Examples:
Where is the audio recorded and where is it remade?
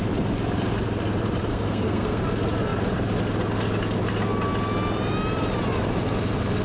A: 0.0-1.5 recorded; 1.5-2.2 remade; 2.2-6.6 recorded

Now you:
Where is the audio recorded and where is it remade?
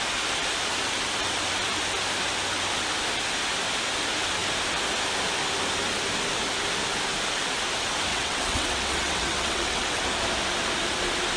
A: 0.0-8.1 recorded; 8.1-10.0 remade; 10.0-11.4 recorded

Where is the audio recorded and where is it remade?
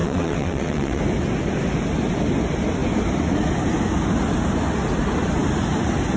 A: 0.0-1.0 remade; 1.0-6.2 recorded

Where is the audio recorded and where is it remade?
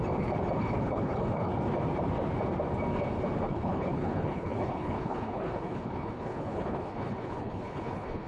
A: 0.0-0.6 recorded; 0.6-1.5 remade; 1.5-3.4 recorded; 3.4-8.3 remade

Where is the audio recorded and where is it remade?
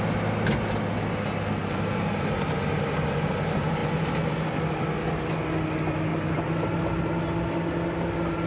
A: 0.0-1.6 recorded; 1.6-2.3 remade; 2.3-6.1 recorded; 6.1-7.0 remade; 7.0-8.5 recorded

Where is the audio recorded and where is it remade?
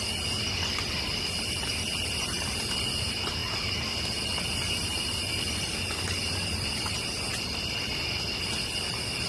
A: 0.0-9.3 recorded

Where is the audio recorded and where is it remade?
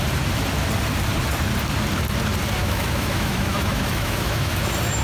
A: 0.0-2.6 recorded; 2.6-4.6 remade; 4.6-5.0 recorded